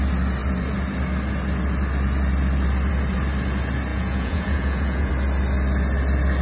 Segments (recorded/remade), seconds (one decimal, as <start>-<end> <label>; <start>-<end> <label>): 0.0-3.9 recorded; 3.9-5.1 remade; 5.1-6.4 recorded